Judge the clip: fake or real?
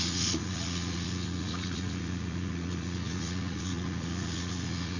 fake